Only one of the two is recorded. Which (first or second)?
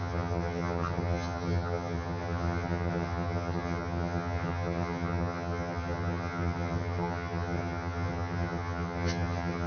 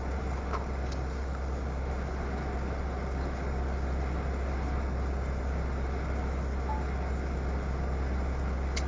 second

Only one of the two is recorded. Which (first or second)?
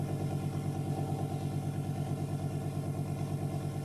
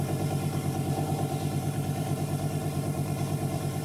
first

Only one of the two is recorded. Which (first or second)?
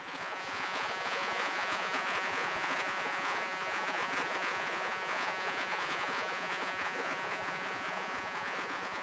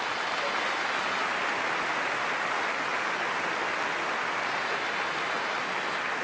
second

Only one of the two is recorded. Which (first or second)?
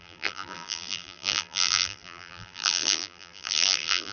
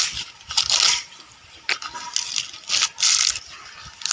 second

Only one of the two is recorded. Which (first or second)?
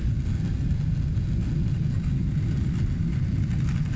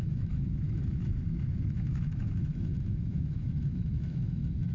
first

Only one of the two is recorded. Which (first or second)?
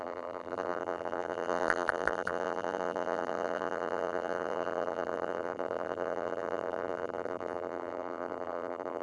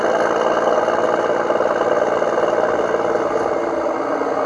second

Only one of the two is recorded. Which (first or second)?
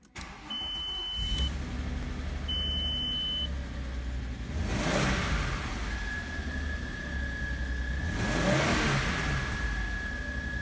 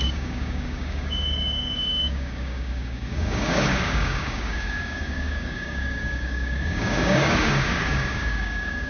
first